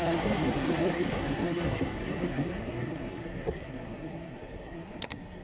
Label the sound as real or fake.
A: fake